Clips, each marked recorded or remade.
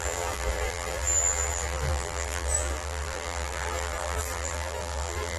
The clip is remade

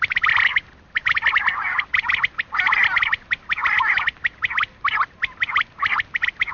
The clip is recorded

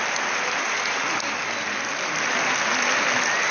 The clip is recorded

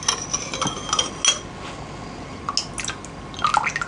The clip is recorded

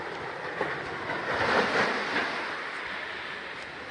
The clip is recorded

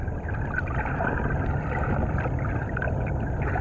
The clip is remade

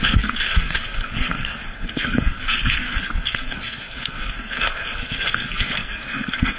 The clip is remade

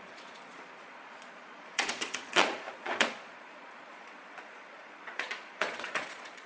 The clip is remade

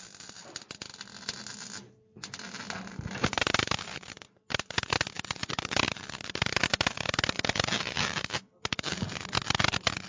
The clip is recorded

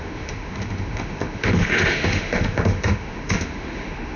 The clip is remade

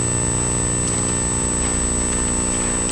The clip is recorded